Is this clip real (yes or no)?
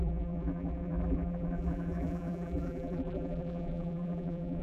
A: no